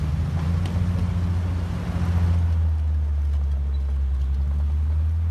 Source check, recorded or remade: recorded